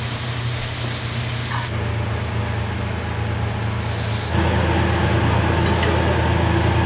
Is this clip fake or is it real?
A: real